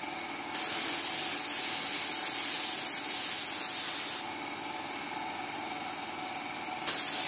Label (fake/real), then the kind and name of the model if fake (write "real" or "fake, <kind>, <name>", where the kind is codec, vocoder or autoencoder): real